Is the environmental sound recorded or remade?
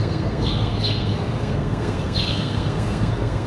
remade